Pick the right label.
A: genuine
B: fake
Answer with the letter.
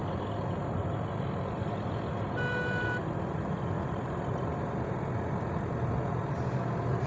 A